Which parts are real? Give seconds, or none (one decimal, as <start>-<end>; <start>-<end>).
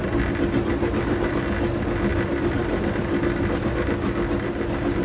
0.0-0.7; 1.3-2.1; 3.7-5.0